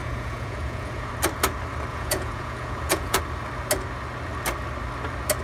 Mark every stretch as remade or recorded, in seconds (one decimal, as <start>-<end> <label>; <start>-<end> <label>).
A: 0.0-1.1 remade; 1.1-1.9 recorded; 1.9-3.2 remade; 3.2-5.4 recorded

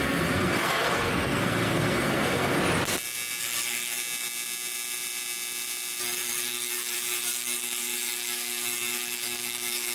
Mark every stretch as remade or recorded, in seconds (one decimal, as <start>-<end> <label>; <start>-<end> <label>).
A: 0.0-2.6 remade; 2.6-3.4 recorded; 3.4-4.0 remade; 4.0-6.0 recorded; 6.0-9.9 remade